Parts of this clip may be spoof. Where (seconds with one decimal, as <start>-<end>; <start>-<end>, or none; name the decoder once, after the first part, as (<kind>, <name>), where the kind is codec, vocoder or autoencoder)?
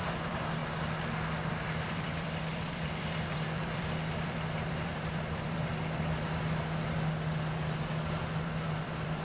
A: 0.0-0.6 (vocoder, BigVGAN v2); 1.5-5.7; 8.2-9.2